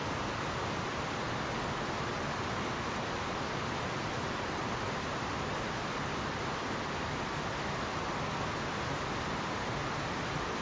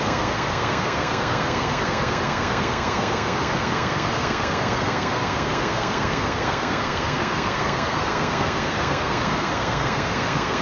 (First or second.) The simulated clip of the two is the second